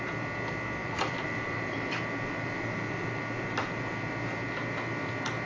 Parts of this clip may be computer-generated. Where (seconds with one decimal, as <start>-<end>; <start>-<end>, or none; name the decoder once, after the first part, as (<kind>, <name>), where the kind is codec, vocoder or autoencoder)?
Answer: 0.8-4.1 (vocoder, BigVGAN v2)